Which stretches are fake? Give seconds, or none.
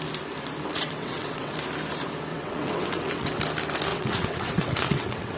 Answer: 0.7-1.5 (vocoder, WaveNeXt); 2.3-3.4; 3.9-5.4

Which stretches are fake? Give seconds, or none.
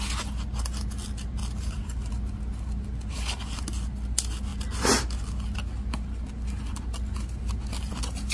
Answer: 1.4-2.1 (vocoder, BigVGAN v2)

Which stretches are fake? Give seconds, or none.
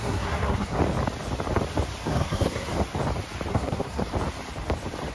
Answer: 0.0-0.8 (codec, SNAC); 2.0-2.7; 3.5-4.0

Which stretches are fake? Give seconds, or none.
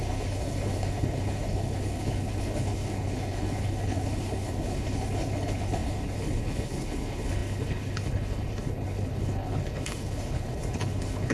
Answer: 0.0-11.3 (codec, HILCodec)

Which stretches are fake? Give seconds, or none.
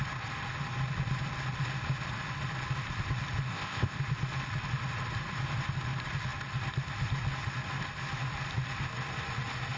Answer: 3.5-4.0 (codec, ZipCodec)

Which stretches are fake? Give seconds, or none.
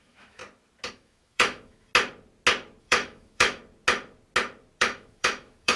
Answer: 0.0-0.4 (autoencoder, DAC-VAE); 0.9-1.9; 2.8-3.6; 4.8-5.8